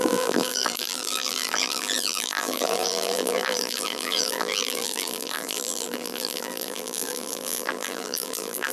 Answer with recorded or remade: remade